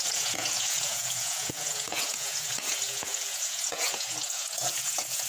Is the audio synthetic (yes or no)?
yes